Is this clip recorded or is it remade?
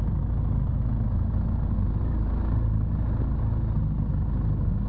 recorded